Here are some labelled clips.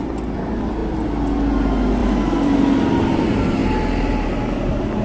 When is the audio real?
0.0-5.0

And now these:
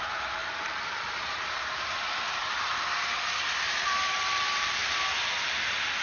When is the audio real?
2.4-3.7